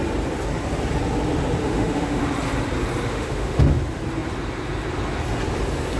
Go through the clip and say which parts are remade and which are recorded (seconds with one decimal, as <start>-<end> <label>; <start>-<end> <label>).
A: 0.0-1.6 recorded; 1.6-2.2 remade; 2.2-3.1 recorded; 3.1-3.8 remade; 3.8-6.0 recorded